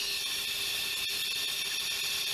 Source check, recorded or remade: recorded